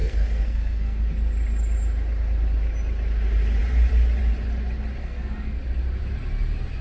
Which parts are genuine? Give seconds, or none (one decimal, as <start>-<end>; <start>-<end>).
1.1-5.0; 5.6-6.8

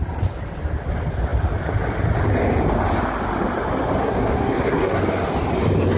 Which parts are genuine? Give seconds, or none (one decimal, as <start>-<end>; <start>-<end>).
0.0-4.0; 5.0-6.0

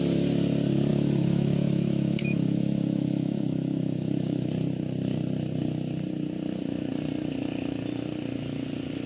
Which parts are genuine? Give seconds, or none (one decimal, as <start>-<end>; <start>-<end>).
0.0-0.9; 4.5-9.1

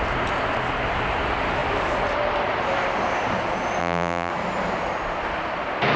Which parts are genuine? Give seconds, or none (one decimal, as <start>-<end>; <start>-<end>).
0.0-3.8; 4.3-6.0

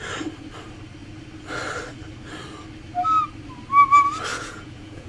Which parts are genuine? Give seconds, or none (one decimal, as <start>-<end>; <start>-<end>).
0.0-4.3